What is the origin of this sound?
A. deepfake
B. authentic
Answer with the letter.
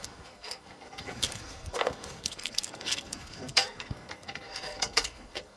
A